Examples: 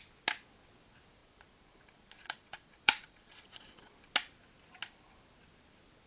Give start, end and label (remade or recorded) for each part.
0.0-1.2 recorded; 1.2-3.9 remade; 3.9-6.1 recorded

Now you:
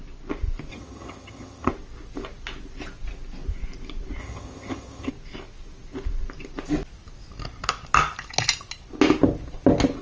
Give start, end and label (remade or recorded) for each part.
0.0-0.7 recorded; 0.7-1.7 remade; 1.7-4.2 recorded; 4.2-5.1 remade; 5.1-10.0 recorded

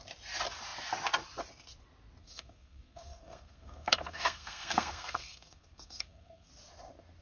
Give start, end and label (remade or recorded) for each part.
0.0-2.2 recorded; 2.2-6.5 remade; 6.5-7.2 recorded

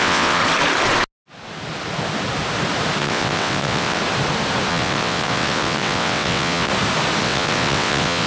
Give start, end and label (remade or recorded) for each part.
0.0-0.4 remade; 0.4-3.0 recorded; 3.0-4.0 remade; 4.0-4.7 recorded; 4.7-6.7 remade; 6.7-7.2 recorded; 7.2-8.3 remade

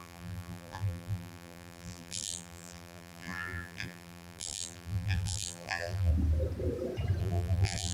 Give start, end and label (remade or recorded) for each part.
0.0-6.1 remade; 6.1-7.2 recorded; 7.2-7.9 remade

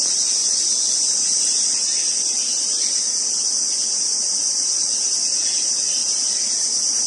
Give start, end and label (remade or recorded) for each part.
0.0-4.1 recorded; 4.1-5.5 remade; 5.5-7.1 recorded